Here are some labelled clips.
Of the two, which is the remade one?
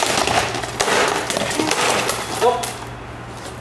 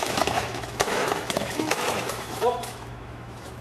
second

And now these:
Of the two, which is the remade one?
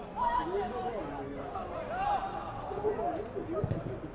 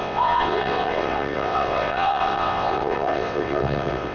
second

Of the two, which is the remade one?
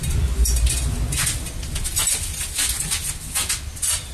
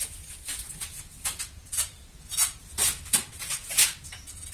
second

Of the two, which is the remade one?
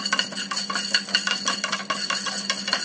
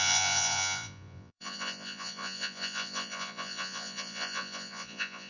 second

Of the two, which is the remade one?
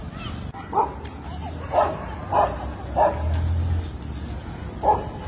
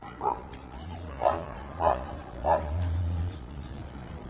second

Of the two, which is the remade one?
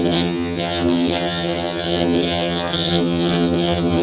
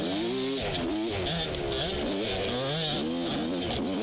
first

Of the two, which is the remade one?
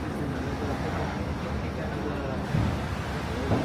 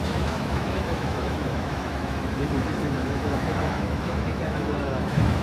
second